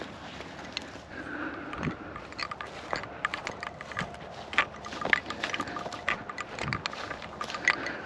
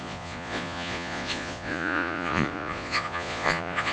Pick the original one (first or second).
first